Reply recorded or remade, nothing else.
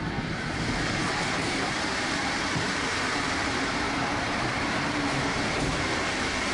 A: remade